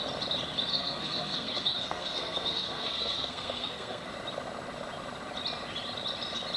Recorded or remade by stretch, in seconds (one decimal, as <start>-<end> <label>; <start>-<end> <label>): 0.0-0.7 recorded; 0.7-4.1 remade; 4.1-6.6 recorded